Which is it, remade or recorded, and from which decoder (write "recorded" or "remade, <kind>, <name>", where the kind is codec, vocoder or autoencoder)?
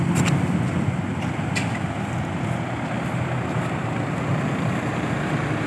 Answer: recorded